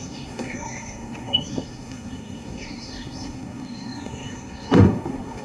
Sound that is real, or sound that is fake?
fake